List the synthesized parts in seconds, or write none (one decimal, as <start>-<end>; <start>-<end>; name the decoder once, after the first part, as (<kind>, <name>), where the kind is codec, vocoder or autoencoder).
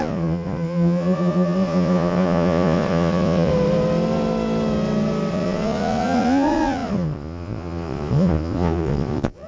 0.0-3.5 (vocoder, Vocos); 5.3-9.5